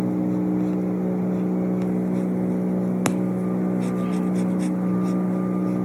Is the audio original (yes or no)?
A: yes